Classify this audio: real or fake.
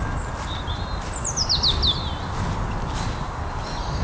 real